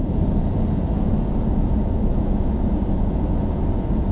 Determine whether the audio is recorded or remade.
remade